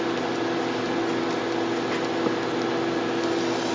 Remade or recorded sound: recorded